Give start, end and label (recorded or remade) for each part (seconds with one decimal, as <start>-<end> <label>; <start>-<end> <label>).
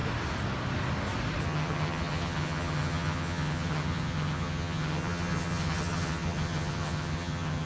0.0-1.4 recorded; 1.4-7.7 remade